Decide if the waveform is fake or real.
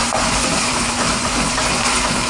fake